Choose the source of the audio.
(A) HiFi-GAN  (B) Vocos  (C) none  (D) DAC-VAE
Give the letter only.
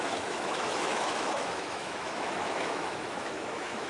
D